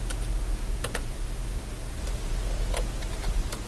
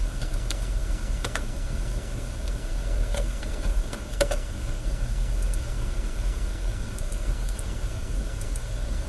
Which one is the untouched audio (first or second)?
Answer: first